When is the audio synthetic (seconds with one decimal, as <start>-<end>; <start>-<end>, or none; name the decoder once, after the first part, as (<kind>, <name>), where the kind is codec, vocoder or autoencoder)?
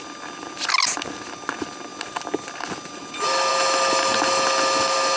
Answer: none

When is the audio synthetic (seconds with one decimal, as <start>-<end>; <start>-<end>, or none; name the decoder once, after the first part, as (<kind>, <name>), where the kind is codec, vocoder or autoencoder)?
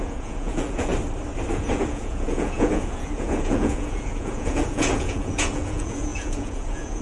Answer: 0.0-0.9 (vocoder, Vocos); 1.5-7.0